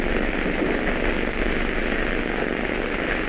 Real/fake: real